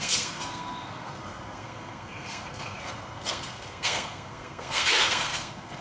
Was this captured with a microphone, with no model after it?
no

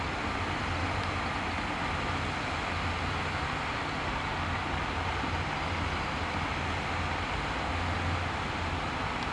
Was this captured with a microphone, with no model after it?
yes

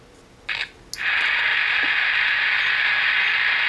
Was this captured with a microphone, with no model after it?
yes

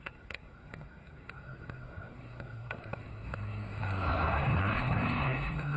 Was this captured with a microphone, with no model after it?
no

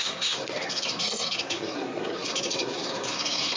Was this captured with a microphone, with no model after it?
no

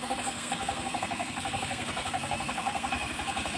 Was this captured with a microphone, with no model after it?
no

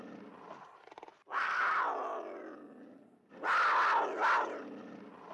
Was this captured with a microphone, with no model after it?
yes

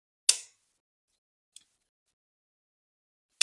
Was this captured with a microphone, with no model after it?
yes